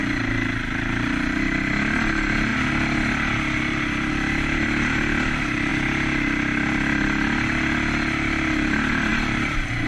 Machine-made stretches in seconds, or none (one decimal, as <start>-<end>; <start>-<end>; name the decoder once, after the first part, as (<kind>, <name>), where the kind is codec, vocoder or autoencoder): none